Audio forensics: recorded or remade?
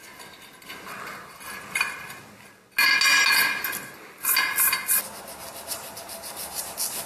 recorded